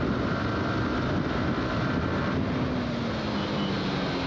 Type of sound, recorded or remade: recorded